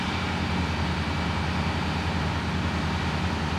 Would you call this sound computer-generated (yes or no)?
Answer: no